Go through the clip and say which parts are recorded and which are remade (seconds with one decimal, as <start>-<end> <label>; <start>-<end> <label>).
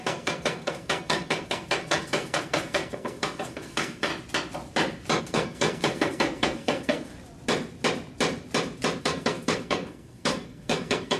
0.0-4.1 remade; 4.1-5.2 recorded; 5.2-7.1 remade; 7.1-9.0 recorded; 9.0-11.2 remade